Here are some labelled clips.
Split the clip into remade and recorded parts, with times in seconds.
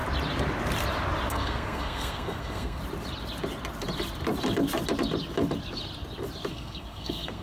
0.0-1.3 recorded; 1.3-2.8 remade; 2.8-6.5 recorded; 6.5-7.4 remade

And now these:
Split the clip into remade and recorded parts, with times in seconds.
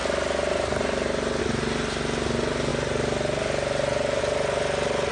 0.0-5.1 recorded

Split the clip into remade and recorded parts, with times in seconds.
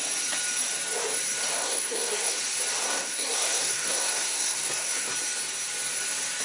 0.0-1.6 recorded; 1.6-2.4 remade; 2.4-2.8 recorded; 2.8-5.1 remade; 5.1-6.4 recorded